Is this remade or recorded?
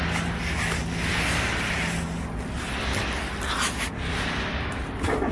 recorded